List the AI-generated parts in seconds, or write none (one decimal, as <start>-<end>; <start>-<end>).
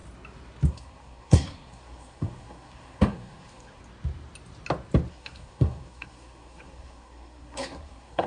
0.7-3.8; 5.1-8.3